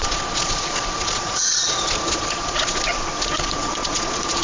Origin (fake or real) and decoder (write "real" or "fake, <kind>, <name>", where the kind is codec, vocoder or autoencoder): fake, vocoder, Vocos